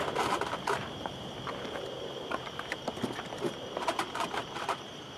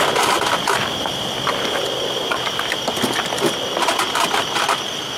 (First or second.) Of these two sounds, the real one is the second